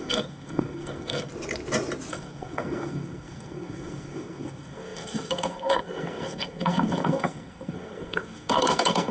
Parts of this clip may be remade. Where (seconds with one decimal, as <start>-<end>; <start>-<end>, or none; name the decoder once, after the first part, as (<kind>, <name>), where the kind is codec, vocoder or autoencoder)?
0.0-1.3 (codec, SNAC); 2.1-9.1